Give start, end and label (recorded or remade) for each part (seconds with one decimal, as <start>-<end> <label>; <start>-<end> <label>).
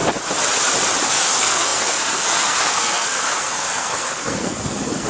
0.0-1.1 recorded; 1.1-5.1 remade